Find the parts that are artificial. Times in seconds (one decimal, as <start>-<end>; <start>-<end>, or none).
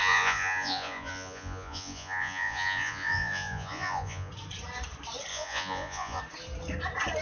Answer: 0.0-4.3; 5.3-6.2